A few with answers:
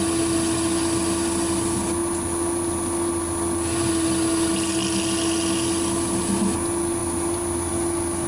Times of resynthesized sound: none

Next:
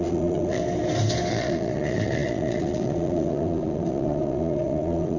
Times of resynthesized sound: 0.0-0.6; 1.3-5.2

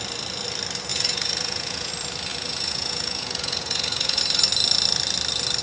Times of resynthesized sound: 0.9-1.9; 2.3-4.2

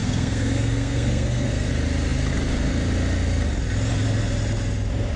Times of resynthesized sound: 0.0-1.7

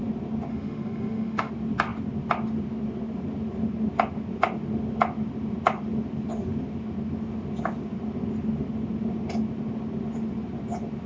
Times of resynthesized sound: 0.5-1.5